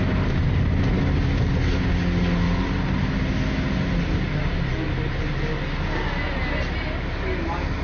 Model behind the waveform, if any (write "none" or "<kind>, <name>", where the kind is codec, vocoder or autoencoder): none